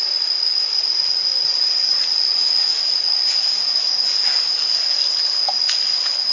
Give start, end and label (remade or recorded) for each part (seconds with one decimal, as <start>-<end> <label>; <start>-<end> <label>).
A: 0.0-3.4 remade; 3.4-6.3 recorded